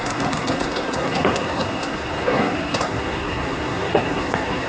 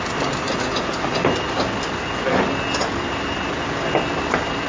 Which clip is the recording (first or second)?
second